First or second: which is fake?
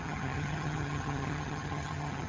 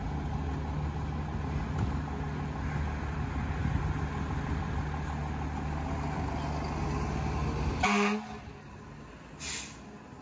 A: first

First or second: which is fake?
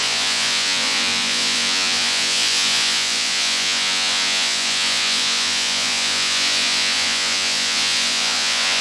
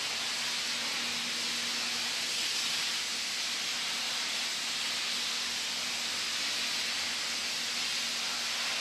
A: first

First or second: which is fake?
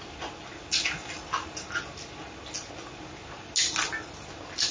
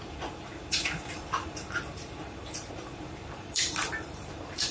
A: second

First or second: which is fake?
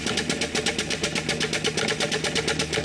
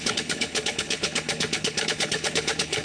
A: second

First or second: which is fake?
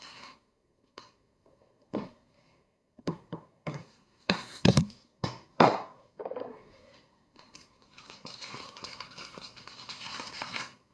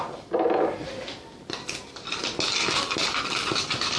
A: first